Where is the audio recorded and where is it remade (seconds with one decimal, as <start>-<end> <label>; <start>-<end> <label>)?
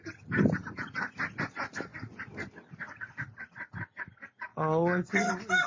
0.0-4.5 recorded; 4.5-5.3 remade; 5.3-5.7 recorded